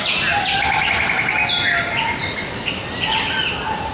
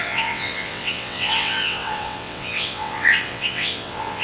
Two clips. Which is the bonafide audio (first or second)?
first